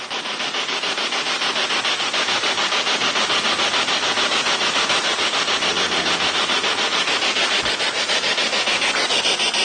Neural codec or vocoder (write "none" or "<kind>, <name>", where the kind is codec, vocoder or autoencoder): none